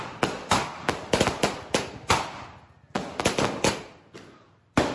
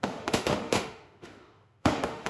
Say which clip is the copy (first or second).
second